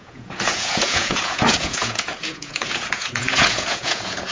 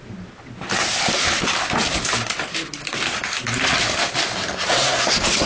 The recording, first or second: second